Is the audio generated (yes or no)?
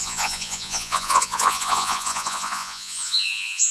yes